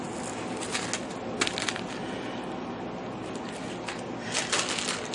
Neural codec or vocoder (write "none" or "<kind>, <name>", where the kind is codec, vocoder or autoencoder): none